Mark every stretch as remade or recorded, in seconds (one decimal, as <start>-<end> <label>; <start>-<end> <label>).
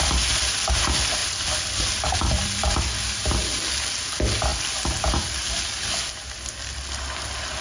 0.0-1.2 recorded; 1.2-2.8 remade; 2.8-7.6 recorded